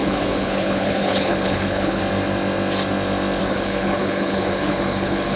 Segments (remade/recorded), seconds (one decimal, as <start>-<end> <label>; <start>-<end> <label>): 0.0-2.0 remade; 2.0-3.4 recorded; 3.4-5.3 remade